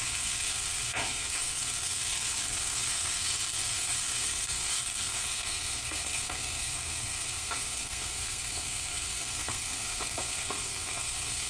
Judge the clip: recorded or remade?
remade